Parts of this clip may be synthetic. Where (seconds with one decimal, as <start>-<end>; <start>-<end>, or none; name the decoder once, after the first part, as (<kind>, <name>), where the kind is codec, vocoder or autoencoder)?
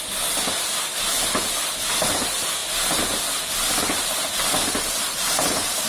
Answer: none